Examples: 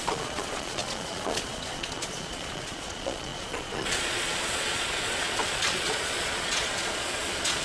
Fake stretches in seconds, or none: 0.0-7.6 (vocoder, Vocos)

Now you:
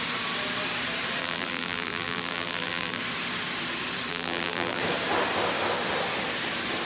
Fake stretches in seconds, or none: 1.2-3.0 (vocoder, BigVGAN v2); 4.1-4.8

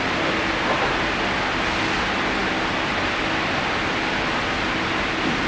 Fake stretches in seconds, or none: none

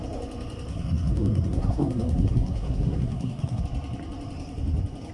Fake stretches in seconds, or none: 0.7-3.6 (codec, SNAC)